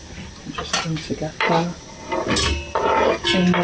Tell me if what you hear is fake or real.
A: real